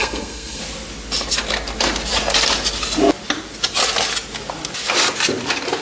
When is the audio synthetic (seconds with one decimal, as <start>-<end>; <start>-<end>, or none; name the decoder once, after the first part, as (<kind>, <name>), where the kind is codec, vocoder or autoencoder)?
0.0-0.6 (codec, SNAC)